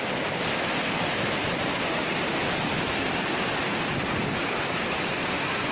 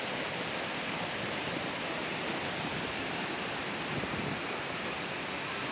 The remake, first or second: second